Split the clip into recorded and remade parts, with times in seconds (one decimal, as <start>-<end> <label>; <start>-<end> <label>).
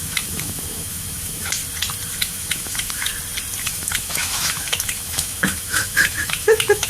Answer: 0.0-1.6 remade; 1.6-2.1 recorded; 2.1-3.1 remade; 3.1-3.6 recorded; 3.6-6.9 remade